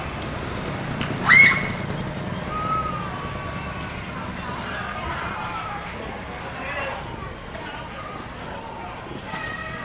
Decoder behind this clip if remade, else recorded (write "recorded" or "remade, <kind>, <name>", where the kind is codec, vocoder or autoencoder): recorded